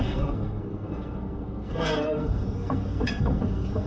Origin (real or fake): fake